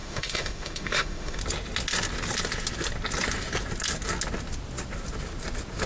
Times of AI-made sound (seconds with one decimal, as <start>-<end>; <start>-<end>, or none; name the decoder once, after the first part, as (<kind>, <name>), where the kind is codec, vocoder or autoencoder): 0.0-1.4 (autoencoder, DAC-VAE)